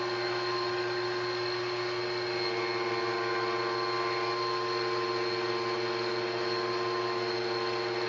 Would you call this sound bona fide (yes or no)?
yes